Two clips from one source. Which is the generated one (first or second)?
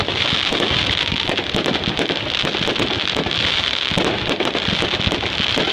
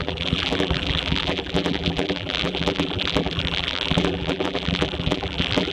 second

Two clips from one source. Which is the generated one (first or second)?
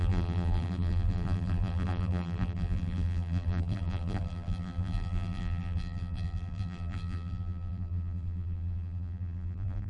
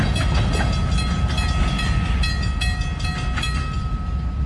first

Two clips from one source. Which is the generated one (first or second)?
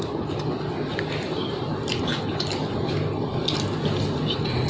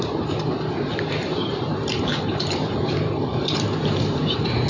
second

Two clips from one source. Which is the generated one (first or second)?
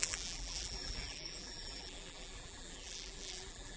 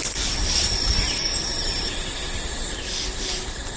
first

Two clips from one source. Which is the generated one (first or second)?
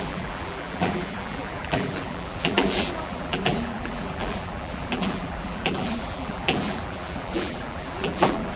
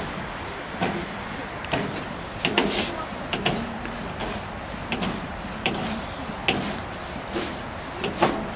first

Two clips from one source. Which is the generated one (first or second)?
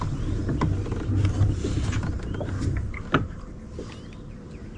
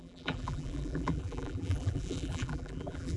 second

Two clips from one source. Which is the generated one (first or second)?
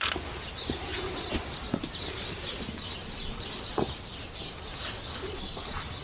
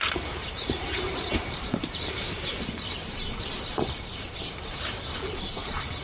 second